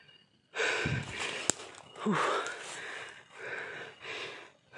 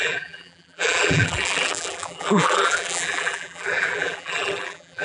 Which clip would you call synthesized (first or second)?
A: second